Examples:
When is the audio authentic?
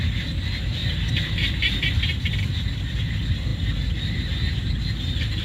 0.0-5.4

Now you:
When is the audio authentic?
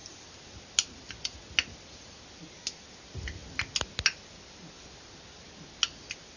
0.0-6.4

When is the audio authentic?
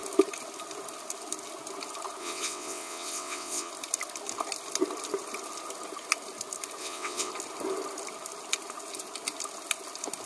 0.0-2.2; 3.7-6.8; 7.3-10.3